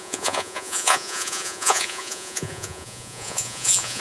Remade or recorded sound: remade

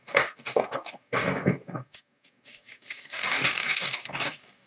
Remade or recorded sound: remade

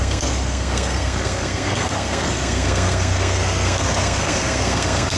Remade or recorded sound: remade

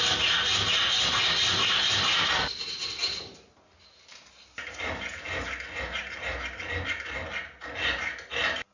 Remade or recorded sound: recorded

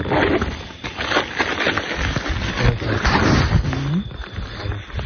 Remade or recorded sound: recorded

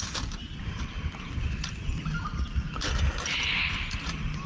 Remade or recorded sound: recorded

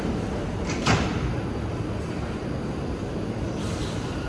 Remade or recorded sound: remade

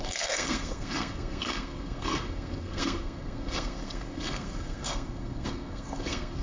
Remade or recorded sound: remade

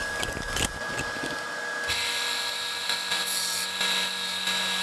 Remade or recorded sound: recorded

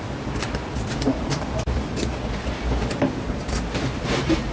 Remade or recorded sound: recorded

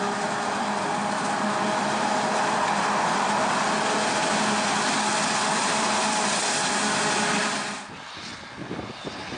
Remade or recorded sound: recorded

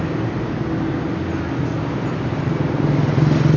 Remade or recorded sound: recorded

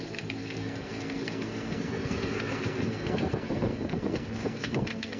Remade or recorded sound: remade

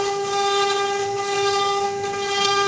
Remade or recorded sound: remade